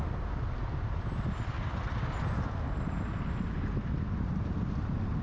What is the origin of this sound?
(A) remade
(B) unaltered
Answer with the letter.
B